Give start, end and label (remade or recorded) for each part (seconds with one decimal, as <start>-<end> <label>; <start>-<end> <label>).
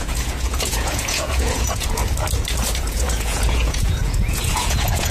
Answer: 0.0-2.0 remade; 2.0-2.8 recorded; 2.8-5.1 remade